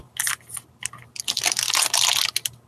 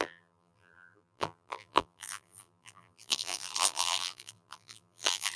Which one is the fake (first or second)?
second